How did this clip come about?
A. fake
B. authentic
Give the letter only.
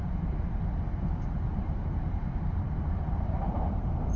A